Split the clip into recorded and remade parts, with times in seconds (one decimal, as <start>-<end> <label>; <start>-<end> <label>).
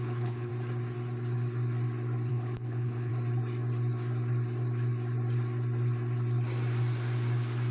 0.0-0.5 remade; 0.5-2.3 recorded; 2.3-3.1 remade; 3.1-7.7 recorded